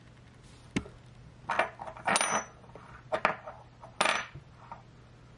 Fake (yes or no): no